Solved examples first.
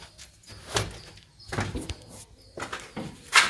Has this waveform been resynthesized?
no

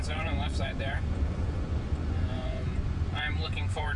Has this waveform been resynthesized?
yes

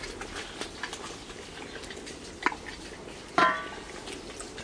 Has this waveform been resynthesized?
no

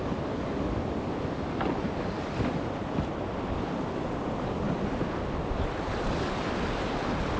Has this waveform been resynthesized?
no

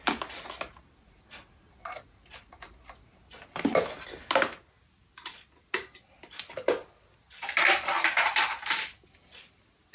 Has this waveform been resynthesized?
no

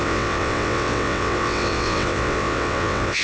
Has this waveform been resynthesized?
yes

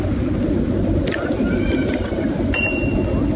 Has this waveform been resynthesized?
no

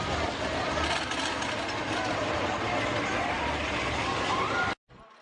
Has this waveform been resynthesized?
no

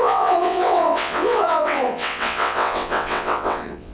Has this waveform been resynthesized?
yes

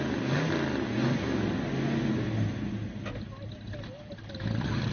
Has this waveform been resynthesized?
no